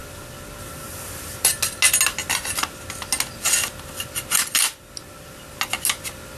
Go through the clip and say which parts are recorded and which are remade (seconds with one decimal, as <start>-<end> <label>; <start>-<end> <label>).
0.0-1.5 remade; 1.5-6.4 recorded